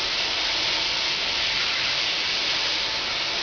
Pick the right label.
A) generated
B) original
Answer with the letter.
B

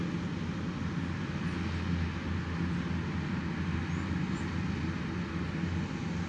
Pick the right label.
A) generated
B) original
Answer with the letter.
B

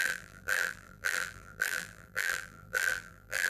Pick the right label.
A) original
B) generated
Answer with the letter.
B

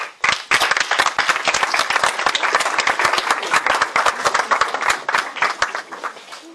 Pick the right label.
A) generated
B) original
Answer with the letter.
B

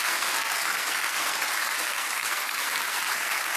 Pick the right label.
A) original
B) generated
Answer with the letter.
B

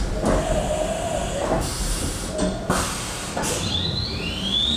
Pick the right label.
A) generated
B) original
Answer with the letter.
B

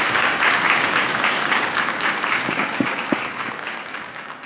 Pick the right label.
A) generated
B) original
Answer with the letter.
A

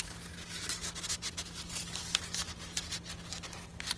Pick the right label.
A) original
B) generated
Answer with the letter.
A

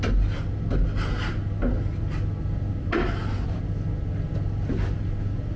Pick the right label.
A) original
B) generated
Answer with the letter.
A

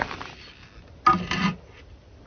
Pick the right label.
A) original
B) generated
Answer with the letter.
A